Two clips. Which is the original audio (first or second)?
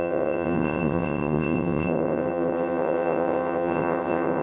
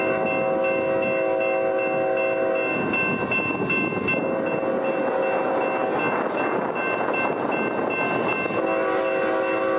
second